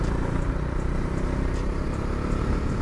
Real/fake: real